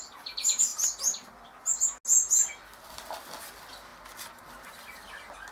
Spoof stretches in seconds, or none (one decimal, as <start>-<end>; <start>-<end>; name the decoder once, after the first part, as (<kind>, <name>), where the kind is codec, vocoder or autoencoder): none